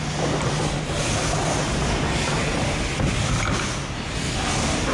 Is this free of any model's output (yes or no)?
yes